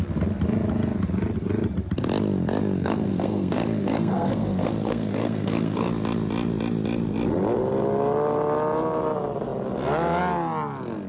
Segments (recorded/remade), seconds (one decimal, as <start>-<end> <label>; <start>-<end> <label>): 0.0-2.8 recorded; 2.8-5.9 remade; 5.9-11.1 recorded